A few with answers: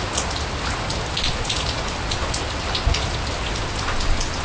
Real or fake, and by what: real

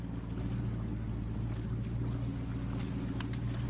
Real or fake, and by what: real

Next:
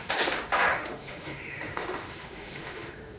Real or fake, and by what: fake, autoencoder, DAC-VAE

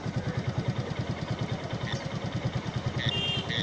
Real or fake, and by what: real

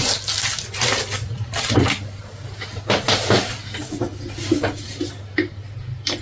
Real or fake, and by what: real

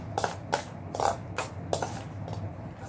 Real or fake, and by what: real